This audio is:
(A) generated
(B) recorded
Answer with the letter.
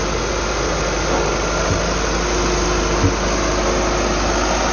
B